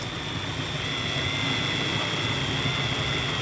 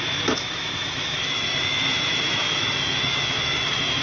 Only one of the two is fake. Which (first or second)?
second